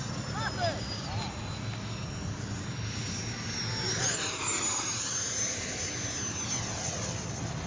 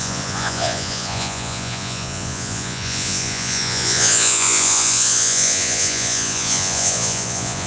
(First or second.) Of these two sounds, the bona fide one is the first